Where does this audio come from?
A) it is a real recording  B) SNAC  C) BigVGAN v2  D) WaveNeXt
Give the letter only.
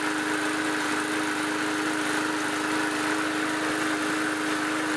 A